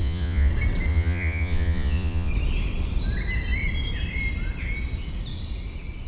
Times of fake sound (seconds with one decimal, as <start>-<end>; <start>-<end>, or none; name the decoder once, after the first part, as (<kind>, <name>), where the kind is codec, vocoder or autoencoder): 0.0-0.5 (vocoder, Vocos); 0.9-2.3